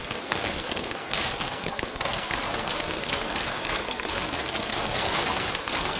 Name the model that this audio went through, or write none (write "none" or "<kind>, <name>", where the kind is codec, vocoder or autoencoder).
codec, SNAC